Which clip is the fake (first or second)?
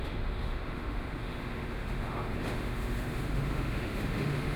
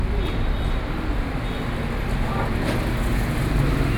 first